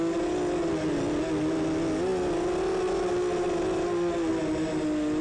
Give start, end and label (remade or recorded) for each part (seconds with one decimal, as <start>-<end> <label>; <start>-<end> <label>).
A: 0.0-5.2 recorded